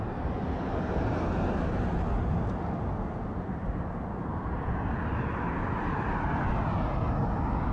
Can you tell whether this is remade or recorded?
recorded